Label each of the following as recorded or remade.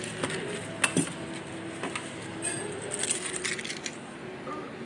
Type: recorded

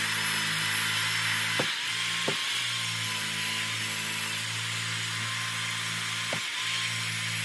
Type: recorded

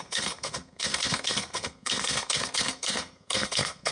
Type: remade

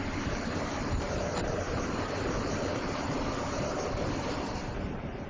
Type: remade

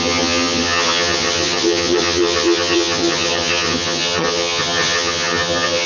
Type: remade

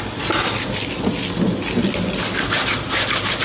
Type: recorded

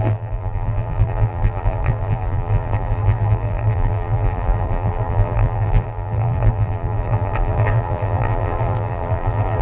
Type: remade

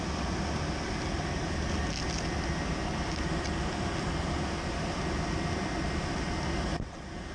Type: recorded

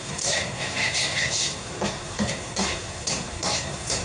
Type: remade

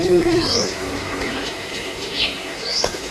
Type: remade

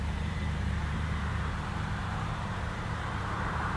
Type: remade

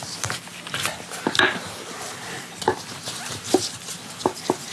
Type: recorded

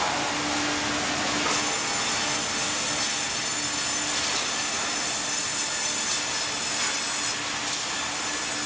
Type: recorded